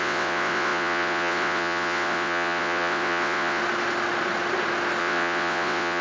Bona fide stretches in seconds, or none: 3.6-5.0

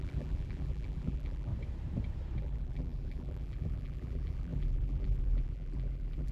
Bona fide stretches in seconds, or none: 1.5-2.4